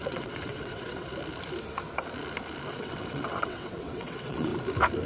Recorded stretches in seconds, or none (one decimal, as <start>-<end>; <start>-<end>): 1.1-2.7; 4.5-5.1